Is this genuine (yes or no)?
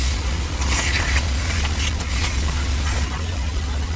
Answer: no